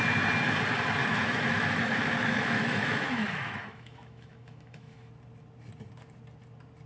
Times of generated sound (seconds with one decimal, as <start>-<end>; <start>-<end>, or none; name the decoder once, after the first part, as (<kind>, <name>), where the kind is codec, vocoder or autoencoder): 1.0-5.1 (autoencoder, DAC-VAE)